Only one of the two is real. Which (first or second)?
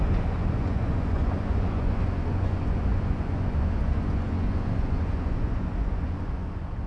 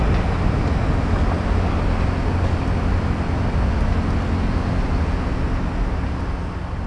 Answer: second